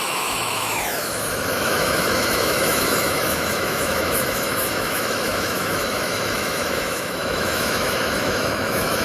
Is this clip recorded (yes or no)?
no